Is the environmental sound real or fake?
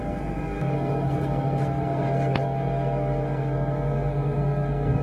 fake